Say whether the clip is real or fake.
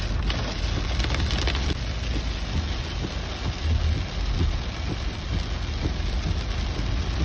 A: real